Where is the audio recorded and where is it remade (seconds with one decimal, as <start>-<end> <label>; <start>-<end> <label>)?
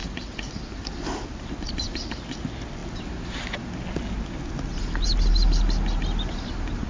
0.0-2.1 remade; 2.1-6.9 recorded